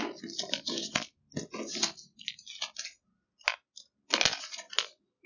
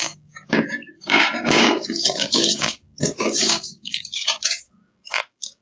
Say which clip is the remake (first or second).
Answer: second